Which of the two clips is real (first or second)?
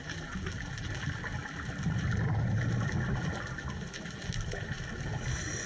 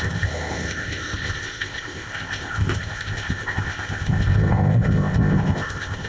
first